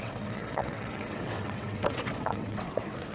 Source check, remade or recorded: remade